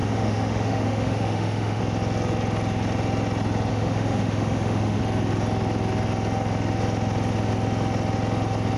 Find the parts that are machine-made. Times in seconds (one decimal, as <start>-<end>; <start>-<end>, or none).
0.0-1.8; 3.7-5.0